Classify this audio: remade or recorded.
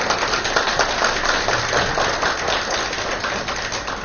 recorded